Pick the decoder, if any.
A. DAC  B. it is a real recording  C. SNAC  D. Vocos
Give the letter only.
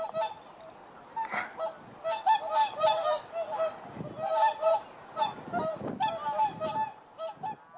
B